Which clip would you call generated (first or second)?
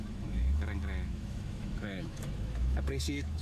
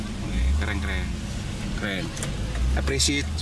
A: first